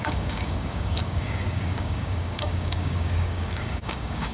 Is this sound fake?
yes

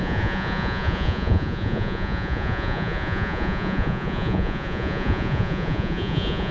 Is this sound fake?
yes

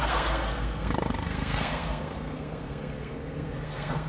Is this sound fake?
yes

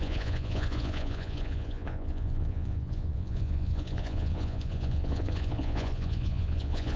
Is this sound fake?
yes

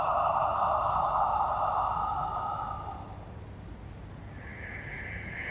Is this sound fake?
no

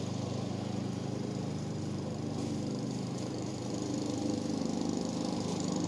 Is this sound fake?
yes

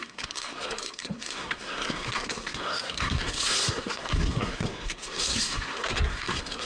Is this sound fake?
yes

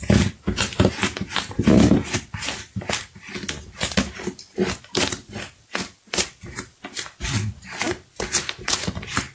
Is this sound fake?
no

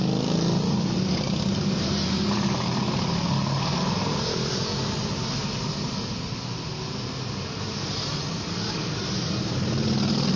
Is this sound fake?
no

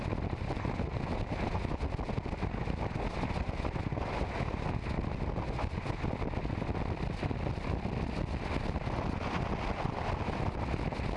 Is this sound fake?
no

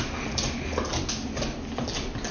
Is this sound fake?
no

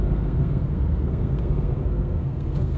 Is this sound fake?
yes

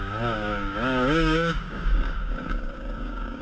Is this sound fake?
yes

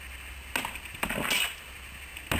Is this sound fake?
no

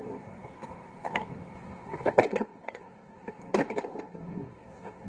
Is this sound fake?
yes